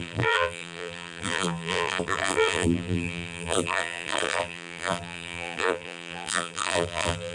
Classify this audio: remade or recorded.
remade